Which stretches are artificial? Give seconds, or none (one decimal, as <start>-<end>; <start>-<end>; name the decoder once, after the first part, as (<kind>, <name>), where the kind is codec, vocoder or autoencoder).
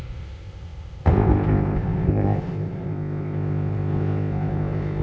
0.0-5.0 (codec, ZipCodec)